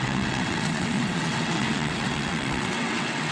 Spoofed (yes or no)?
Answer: yes